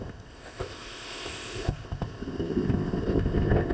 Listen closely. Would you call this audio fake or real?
fake